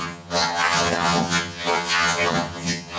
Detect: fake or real fake